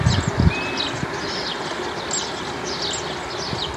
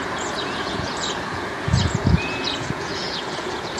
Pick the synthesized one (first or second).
second